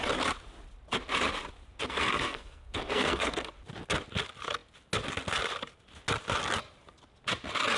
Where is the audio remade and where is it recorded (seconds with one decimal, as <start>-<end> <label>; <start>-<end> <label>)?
0.0-1.8 recorded; 1.8-3.5 remade; 3.5-7.8 recorded